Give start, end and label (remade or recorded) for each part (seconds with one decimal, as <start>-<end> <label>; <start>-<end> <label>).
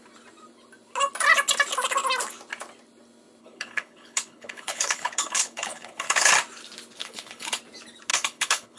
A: 0.0-3.4 recorded; 3.4-6.3 remade; 6.3-7.0 recorded; 7.0-7.6 remade; 7.6-8.1 recorded; 8.1-8.8 remade